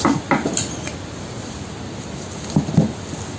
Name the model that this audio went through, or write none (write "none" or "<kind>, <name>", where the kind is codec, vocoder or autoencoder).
none